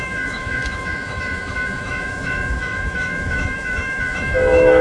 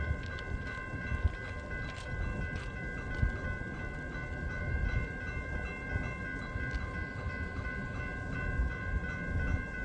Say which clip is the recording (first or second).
second